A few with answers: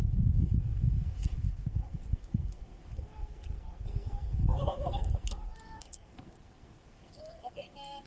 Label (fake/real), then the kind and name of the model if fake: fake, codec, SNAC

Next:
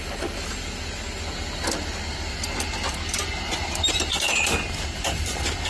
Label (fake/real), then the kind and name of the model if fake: real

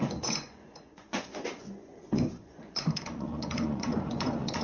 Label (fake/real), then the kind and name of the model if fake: fake, vocoder, Vocos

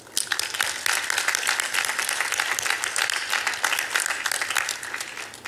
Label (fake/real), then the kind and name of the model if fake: real